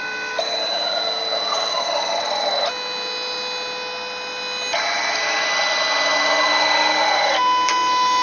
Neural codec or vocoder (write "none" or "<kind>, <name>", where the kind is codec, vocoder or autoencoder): none